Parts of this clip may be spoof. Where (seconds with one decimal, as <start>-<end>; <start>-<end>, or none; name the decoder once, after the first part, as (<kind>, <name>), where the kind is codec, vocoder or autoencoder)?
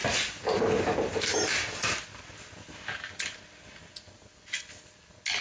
none